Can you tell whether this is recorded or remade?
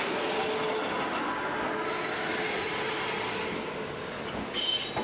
recorded